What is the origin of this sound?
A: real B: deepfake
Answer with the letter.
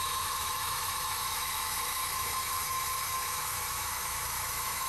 B